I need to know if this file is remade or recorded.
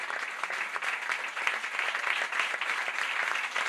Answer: recorded